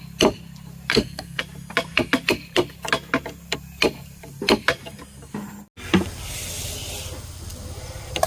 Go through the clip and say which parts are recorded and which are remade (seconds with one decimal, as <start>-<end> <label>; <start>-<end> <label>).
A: 0.0-0.9 recorded; 0.9-1.4 remade; 1.4-8.3 recorded

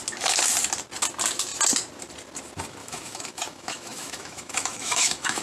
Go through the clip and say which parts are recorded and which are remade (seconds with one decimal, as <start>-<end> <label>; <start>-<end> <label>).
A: 0.0-2.8 recorded; 2.8-5.4 remade